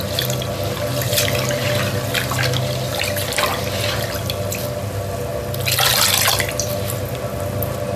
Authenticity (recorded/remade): recorded